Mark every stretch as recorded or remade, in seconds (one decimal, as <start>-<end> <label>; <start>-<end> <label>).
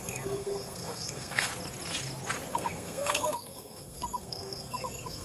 0.0-1.5 remade; 1.5-2.5 recorded; 2.5-5.2 remade